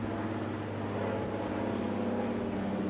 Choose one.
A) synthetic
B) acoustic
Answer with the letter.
B